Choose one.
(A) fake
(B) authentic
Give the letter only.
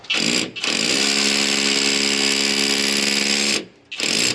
B